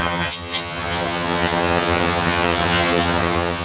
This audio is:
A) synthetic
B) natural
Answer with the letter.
A